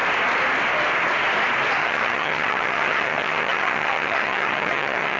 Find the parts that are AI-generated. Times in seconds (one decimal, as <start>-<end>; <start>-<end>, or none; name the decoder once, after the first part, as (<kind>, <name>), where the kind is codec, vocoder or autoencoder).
1.8-5.2 (vocoder, HiFi-GAN)